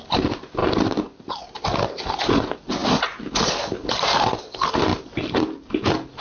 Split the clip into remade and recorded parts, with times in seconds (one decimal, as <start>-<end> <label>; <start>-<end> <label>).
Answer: 0.0-6.2 recorded